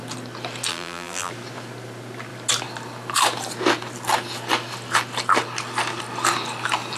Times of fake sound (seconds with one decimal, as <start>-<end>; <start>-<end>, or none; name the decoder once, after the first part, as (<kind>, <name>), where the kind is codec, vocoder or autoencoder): 0.7-1.3 (vocoder, BigVGAN v2)